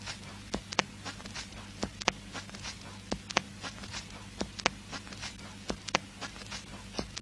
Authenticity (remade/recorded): recorded